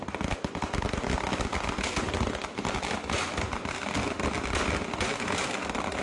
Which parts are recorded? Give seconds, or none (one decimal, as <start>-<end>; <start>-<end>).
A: 0.0-6.0